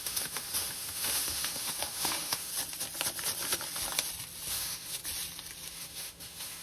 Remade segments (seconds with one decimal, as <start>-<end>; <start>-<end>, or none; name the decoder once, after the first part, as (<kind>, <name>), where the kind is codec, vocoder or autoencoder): 0.0-2.5 (autoencoder, DAC-VAE); 4.5-5.0; 5.7-6.6